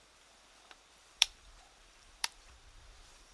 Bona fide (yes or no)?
no